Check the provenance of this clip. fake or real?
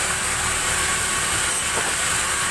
real